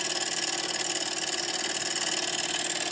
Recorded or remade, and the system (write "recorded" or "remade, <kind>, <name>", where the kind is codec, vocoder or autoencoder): recorded